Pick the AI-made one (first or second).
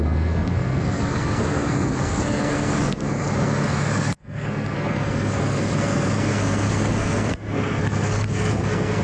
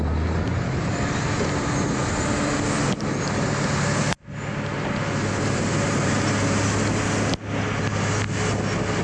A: first